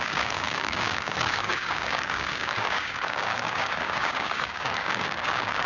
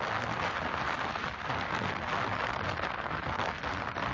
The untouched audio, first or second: second